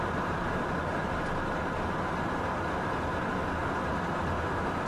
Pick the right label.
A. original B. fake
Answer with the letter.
A